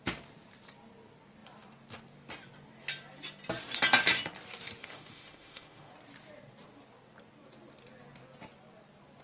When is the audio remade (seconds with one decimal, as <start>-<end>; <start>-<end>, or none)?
4.8-5.9